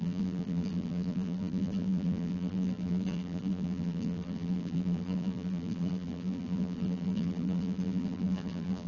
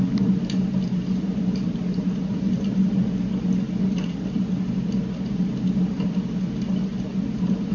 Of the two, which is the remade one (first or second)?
first